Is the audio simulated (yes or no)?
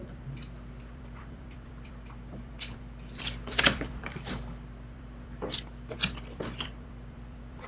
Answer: yes